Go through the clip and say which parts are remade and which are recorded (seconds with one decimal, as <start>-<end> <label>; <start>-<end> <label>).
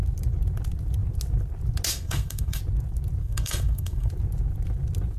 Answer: 0.0-1.9 recorded; 1.9-2.6 remade; 2.6-3.2 recorded; 3.2-4.1 remade; 4.1-5.2 recorded